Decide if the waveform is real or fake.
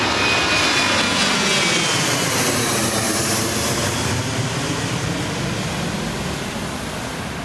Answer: real